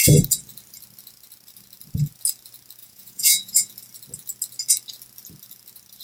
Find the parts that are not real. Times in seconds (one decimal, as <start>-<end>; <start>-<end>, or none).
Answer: 2.8-3.7